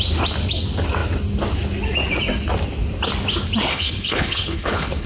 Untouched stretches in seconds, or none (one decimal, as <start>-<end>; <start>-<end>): 0.0-3.7